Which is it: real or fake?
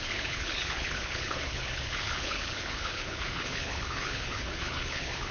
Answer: fake